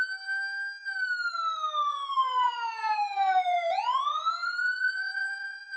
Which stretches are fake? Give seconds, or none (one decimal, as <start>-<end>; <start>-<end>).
1.9-5.8